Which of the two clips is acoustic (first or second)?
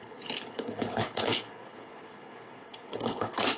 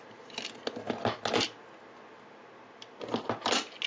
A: second